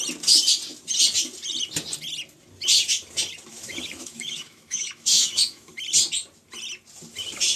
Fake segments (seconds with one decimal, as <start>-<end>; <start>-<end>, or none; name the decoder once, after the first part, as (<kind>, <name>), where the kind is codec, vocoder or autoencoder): 3.5-5.7 (autoencoder, DAC-VAE)